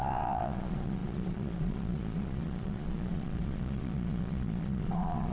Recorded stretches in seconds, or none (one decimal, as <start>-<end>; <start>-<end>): none